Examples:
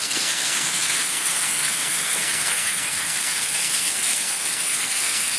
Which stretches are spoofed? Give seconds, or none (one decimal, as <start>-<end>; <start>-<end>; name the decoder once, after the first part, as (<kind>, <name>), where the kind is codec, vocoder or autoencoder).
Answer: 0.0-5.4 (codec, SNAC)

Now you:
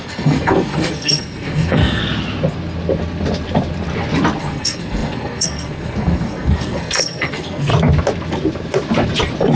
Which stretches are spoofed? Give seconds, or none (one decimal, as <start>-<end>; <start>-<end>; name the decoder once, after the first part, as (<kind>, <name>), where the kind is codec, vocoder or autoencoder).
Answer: 0.0-2.0 (codec, SNAC); 4.4-7.7

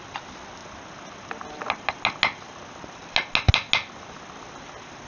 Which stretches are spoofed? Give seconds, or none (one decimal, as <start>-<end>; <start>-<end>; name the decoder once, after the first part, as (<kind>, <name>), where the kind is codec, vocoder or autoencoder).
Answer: none

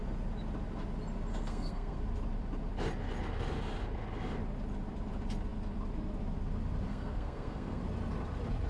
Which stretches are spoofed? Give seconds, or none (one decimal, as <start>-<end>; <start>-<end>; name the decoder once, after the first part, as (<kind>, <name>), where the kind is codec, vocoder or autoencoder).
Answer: 1.3-2.0 (codec, SNAC); 6.9-7.8

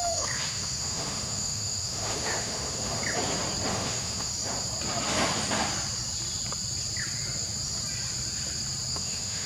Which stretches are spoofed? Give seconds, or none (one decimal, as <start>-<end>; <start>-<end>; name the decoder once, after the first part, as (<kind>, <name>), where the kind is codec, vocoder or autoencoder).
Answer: 0.0-3.0 (autoencoder, DAC-VAE); 3.7-4.3; 8.9-9.5

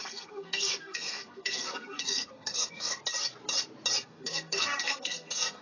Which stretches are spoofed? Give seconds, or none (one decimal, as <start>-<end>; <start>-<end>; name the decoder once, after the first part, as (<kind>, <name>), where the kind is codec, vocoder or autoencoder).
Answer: 0.0-3.0 (codec, SNAC); 4.0-5.6

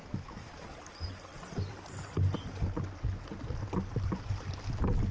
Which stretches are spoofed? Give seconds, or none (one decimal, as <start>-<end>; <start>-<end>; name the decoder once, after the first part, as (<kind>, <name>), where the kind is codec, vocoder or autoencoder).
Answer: 0.0-0.5 (autoencoder, DAC-VAE)